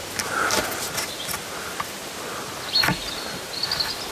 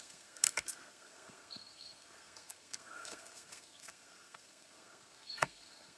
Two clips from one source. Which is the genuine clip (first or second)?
first